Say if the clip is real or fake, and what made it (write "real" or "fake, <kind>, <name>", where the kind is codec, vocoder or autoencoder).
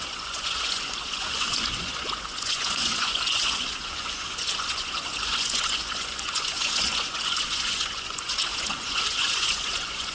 fake, vocoder, Vocos